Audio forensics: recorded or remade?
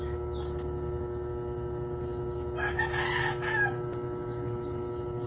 recorded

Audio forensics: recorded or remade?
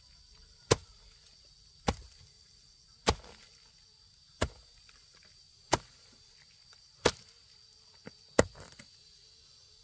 recorded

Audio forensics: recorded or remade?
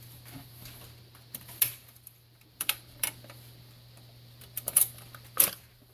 remade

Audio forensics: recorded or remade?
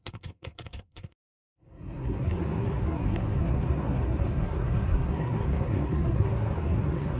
remade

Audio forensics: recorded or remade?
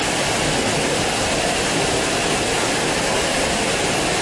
recorded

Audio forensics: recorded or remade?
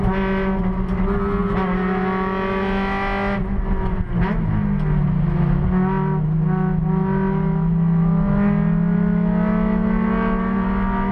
recorded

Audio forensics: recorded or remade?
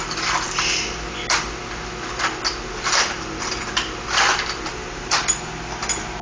recorded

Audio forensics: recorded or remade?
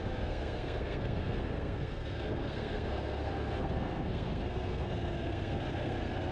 remade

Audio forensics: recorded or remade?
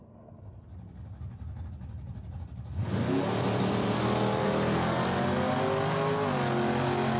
recorded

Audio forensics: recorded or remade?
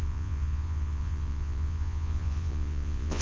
remade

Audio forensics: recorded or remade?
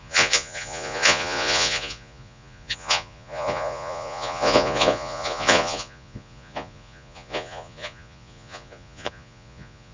remade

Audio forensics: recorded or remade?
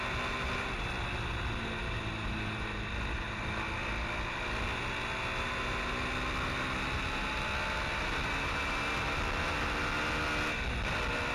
recorded